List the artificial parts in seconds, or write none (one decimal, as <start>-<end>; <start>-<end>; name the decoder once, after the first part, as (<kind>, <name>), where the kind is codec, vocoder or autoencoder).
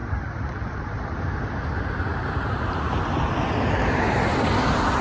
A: 0.0-3.0 (vocoder, BigVGAN v2)